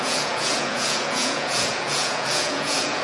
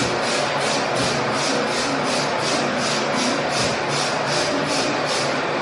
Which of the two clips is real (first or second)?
second